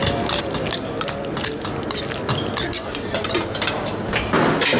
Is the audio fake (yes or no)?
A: no